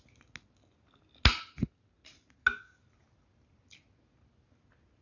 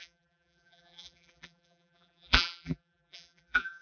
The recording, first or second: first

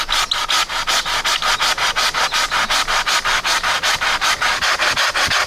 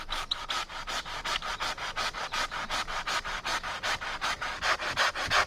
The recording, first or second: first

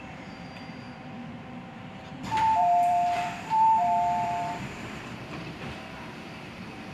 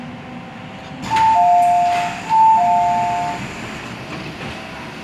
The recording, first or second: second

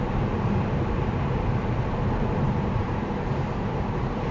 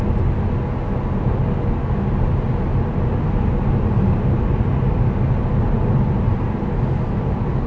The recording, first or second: second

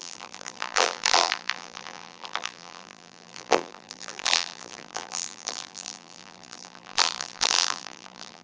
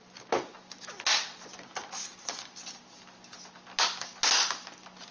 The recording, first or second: second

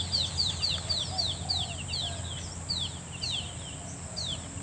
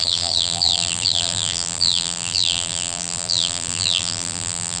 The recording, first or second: first